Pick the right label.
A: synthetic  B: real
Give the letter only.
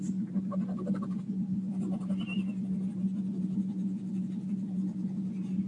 B